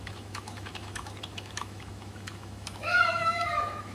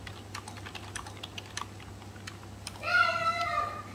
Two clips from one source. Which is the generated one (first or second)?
first